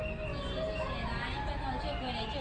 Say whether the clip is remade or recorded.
recorded